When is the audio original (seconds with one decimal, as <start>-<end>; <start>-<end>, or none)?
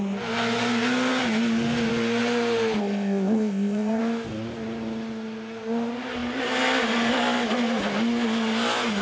0.0-2.8; 4.0-9.0